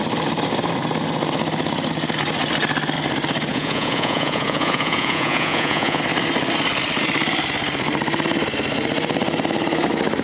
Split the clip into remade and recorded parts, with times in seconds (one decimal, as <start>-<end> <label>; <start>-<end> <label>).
0.0-3.5 recorded; 3.5-6.0 remade; 6.0-10.2 recorded